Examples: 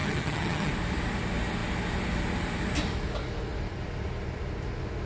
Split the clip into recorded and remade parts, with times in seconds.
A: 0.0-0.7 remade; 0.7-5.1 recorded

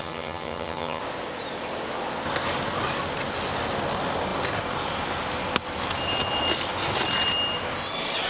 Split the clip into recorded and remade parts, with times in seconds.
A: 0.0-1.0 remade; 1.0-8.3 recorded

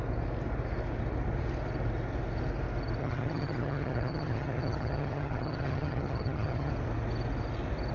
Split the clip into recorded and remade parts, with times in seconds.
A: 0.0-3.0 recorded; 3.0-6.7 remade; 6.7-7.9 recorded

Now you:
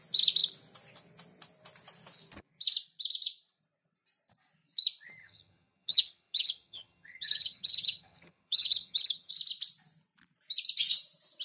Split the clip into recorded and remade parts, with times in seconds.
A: 0.0-5.2 recorded; 5.2-9.3 remade; 9.3-11.4 recorded

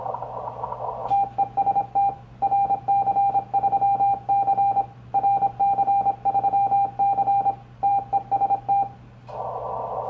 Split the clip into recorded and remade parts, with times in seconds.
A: 0.0-10.1 recorded